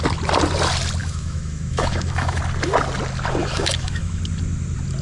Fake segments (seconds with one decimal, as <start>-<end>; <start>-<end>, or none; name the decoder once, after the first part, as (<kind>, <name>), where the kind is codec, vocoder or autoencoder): 1.0-2.4 (autoencoder, DAC-VAE); 3.4-4.2